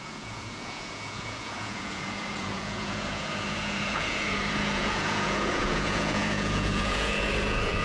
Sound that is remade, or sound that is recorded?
remade